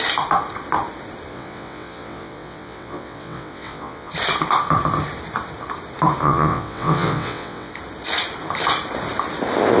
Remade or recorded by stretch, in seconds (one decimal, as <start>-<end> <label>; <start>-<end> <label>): 0.0-1.3 recorded; 1.3-4.1 remade; 4.1-6.2 recorded; 6.2-7.7 remade; 7.7-9.8 recorded